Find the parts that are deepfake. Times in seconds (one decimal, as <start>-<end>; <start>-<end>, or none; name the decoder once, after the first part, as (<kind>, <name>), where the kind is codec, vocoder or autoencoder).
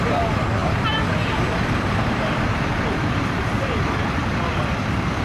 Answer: 0.0-4.2 (vocoder, BigVGAN v2); 4.8-5.2